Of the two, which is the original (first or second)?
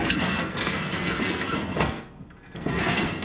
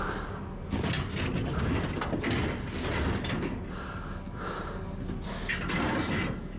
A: second